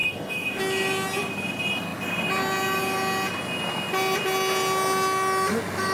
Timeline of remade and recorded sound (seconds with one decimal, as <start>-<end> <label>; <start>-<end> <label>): 0.0-0.6 remade; 0.6-5.9 recorded